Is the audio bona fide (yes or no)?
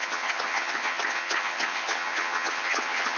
no